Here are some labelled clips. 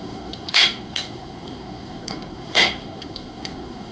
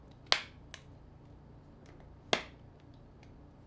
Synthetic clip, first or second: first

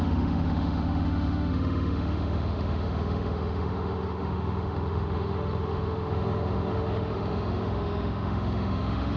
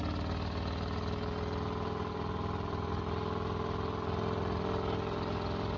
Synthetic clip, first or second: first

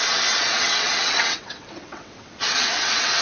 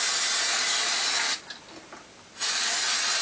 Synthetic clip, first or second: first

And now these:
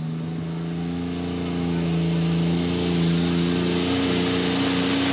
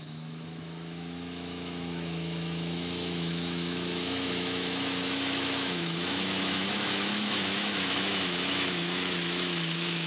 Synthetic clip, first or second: second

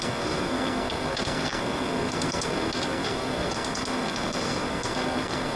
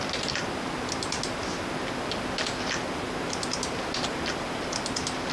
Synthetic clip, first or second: first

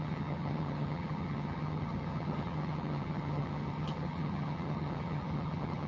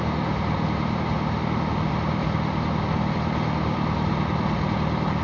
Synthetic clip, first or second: first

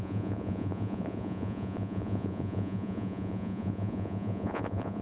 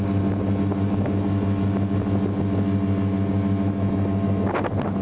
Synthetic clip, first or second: first